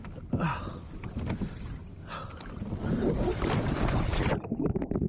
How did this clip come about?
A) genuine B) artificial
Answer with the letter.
A